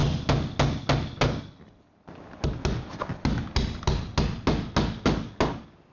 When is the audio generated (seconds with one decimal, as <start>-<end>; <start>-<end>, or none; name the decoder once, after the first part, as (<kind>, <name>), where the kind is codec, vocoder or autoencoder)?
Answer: none